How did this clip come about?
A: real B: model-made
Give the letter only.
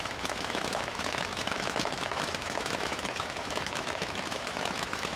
B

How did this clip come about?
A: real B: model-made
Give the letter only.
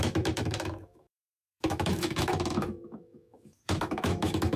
B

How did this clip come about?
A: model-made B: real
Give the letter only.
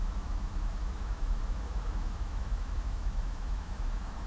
A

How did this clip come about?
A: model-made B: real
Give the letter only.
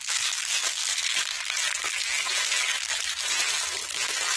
A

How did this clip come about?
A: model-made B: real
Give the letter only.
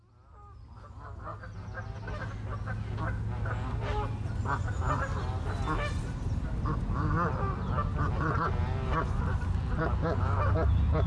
B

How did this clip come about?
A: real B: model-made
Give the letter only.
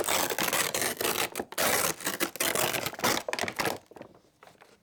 A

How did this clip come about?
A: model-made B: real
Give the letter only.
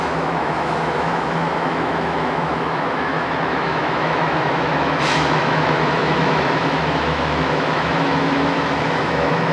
A